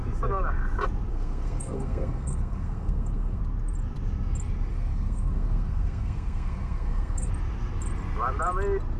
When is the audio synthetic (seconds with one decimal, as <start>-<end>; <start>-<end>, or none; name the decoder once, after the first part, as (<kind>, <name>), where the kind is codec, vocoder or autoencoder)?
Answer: 1.1-3.4 (codec, SNAC); 4.7-7.3